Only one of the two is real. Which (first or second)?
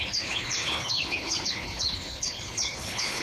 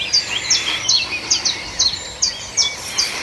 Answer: second